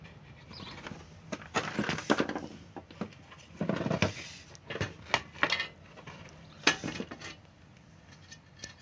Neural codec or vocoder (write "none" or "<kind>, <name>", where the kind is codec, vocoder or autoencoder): none